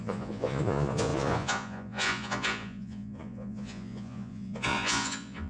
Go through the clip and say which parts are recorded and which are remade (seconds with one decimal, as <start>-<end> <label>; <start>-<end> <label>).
0.0-5.5 remade